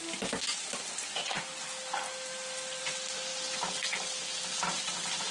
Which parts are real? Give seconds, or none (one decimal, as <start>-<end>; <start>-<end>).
1.5-2.8

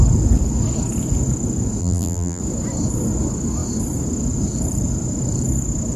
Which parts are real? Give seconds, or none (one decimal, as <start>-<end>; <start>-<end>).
0.0-1.8; 2.4-6.0

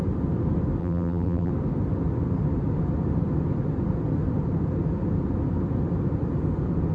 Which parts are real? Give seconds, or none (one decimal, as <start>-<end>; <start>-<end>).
0.0-0.8; 1.5-6.9